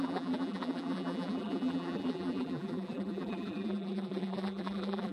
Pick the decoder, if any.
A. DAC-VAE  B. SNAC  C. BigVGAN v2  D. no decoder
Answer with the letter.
C